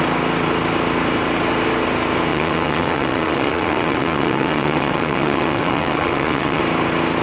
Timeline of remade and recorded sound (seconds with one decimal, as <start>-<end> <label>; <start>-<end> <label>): 0.0-2.3 recorded; 2.3-6.6 remade; 6.6-7.2 recorded

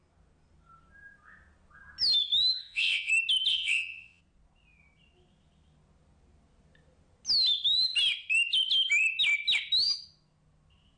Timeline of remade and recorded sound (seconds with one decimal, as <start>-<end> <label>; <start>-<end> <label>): 0.0-2.6 recorded; 2.6-3.1 remade; 3.1-3.5 recorded; 3.5-4.2 remade; 4.2-11.0 recorded

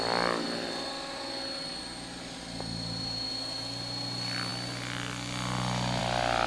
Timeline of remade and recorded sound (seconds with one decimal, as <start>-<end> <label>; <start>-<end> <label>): 0.0-6.5 recorded

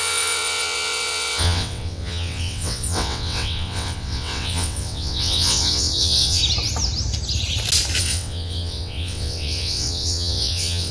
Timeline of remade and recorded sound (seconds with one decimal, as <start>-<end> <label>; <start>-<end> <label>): 0.0-6.4 remade; 6.4-8.0 recorded; 8.0-10.9 remade

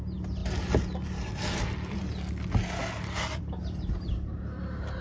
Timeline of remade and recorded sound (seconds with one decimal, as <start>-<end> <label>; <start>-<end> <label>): 0.0-5.0 recorded

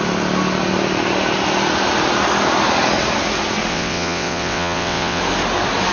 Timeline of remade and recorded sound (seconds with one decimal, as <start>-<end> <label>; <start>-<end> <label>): 0.0-3.7 recorded; 3.7-5.2 remade; 5.2-5.9 recorded

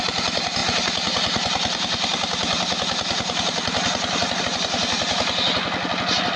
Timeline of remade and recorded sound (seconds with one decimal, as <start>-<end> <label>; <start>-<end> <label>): 0.0-6.4 recorded